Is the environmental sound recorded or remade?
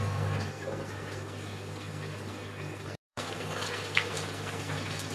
remade